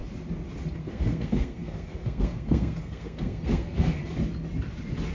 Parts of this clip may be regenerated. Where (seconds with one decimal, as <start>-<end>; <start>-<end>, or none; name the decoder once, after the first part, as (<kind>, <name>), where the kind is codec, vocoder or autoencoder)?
0.8-4.0 (codec, SNAC)

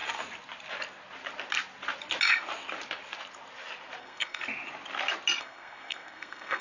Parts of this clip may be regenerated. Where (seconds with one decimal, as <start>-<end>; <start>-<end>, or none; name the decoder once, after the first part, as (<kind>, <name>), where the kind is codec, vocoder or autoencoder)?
4.0-4.4 (codec, SNAC); 5.4-6.6

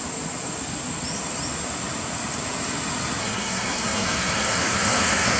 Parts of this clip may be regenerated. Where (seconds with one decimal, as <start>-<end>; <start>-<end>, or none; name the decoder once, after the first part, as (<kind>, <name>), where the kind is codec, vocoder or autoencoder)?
3.2-5.4 (codec, SNAC)